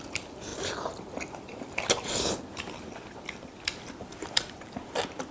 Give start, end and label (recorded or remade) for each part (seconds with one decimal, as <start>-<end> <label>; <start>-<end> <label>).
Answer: 0.0-5.3 recorded